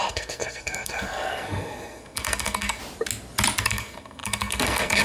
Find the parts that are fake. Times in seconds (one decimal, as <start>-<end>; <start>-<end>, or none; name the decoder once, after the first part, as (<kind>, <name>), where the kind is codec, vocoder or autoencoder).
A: 0.0-2.8 (codec, SNAC); 3.6-5.0